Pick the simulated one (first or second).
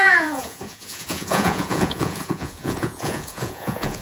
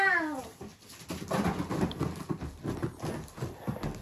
first